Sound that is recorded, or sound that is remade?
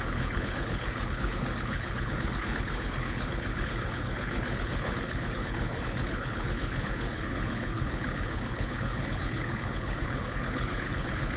remade